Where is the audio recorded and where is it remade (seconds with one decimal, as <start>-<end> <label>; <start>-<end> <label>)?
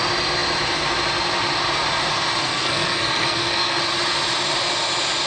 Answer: 0.0-2.4 recorded; 2.4-3.8 remade; 3.8-5.3 recorded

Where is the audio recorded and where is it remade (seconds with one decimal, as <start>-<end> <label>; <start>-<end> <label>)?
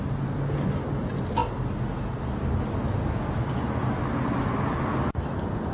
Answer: 0.0-5.7 recorded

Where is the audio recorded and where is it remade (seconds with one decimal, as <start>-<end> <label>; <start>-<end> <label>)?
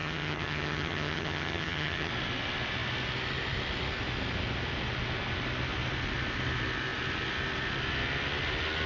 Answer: 0.0-2.1 remade; 2.1-8.9 recorded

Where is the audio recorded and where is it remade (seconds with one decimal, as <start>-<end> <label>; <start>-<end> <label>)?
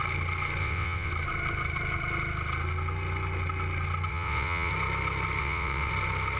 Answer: 0.0-0.6 recorded; 0.6-1.1 remade; 1.1-4.1 recorded; 4.1-4.7 remade; 4.7-5.4 recorded; 5.4-5.9 remade; 5.9-6.4 recorded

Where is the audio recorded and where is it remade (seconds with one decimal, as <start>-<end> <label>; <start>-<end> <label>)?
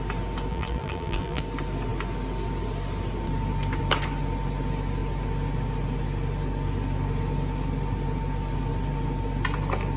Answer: 0.0-0.5 recorded; 0.5-1.4 remade; 1.4-10.0 recorded